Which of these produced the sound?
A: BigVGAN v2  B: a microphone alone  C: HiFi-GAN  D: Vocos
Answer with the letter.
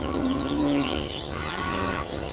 C